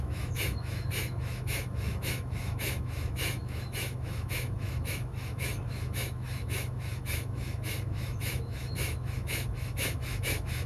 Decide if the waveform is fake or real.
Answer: fake